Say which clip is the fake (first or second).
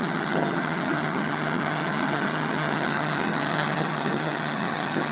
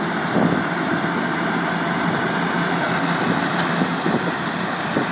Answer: first